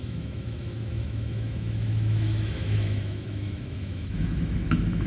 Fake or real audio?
fake